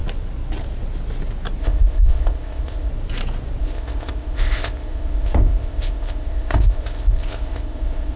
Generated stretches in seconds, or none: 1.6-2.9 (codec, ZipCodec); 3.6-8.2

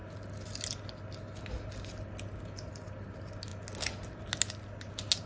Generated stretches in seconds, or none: none

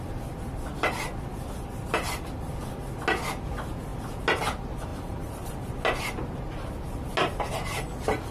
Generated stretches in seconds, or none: 4.9-5.7 (vocoder, BigVGAN v2)

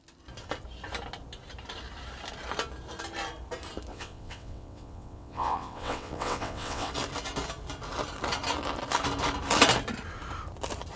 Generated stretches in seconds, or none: 3.9-6.9 (vocoder, WaveNeXt)

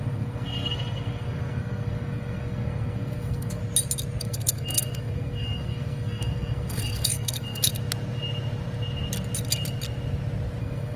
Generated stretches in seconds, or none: 0.0-3.6 (codec, SNAC); 4.2-7.7; 10.6-11.0

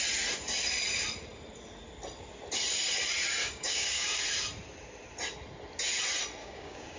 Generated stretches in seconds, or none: 3.4-4.2 (codec, DAC); 6.4-7.0

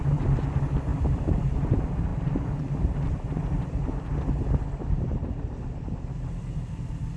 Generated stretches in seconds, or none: none

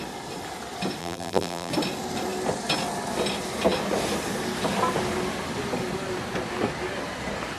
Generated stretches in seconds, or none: 1.0-1.7 (vocoder, BigVGAN v2)